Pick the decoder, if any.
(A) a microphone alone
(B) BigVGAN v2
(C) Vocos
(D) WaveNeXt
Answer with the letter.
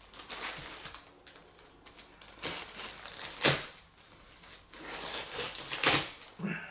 A